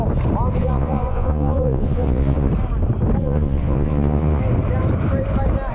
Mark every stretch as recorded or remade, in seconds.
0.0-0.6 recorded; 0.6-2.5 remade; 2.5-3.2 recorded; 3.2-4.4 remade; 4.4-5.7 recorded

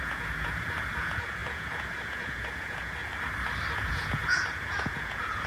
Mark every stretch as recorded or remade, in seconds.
0.0-3.0 remade; 3.0-3.7 recorded; 3.7-5.5 remade

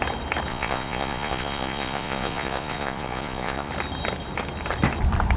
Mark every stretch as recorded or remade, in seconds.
0.0-0.5 recorded; 0.5-3.7 remade; 3.7-5.4 recorded

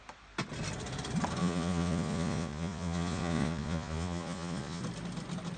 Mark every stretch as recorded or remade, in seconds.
0.0-1.4 recorded; 1.4-4.8 remade; 4.8-5.6 recorded

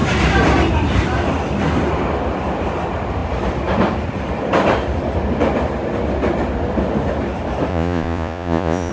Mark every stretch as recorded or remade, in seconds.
0.0-7.7 recorded; 7.7-8.9 remade

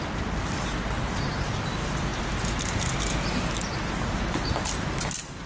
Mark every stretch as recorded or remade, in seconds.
0.0-5.5 recorded